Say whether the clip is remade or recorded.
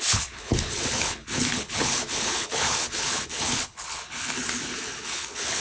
remade